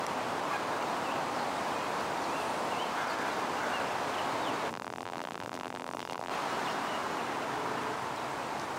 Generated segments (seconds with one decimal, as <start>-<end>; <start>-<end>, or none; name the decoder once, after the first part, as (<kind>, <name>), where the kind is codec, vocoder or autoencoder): 4.7-6.3 (vocoder, BigVGAN v2)